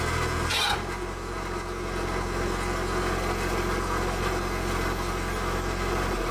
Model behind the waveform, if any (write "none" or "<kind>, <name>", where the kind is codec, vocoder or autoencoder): none